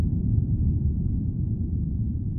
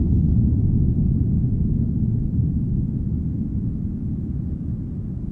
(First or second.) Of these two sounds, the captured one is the second